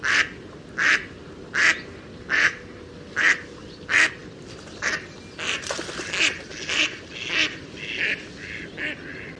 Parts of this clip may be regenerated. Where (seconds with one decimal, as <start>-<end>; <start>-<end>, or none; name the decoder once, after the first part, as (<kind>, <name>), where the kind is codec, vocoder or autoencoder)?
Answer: none